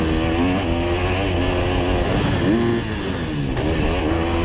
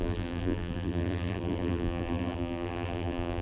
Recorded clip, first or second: first